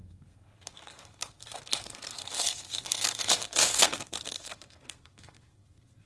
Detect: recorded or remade remade